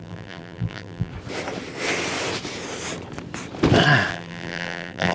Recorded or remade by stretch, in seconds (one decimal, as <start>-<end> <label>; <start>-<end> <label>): 0.0-1.1 remade; 1.1-4.1 recorded; 4.1-5.1 remade